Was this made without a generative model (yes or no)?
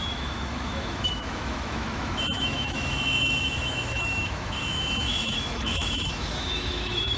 no